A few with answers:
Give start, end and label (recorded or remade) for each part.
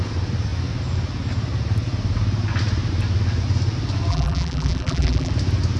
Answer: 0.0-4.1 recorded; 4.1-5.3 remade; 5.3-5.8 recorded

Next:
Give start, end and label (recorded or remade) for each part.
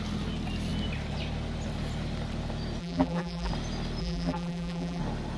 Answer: 0.0-2.8 recorded; 2.8-3.5 remade; 3.5-4.0 recorded; 4.0-5.0 remade; 5.0-5.4 recorded